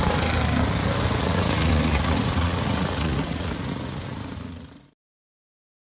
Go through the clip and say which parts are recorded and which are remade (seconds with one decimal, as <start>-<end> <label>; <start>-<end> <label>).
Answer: 0.0-1.2 recorded; 1.2-4.7 remade; 4.7-5.9 recorded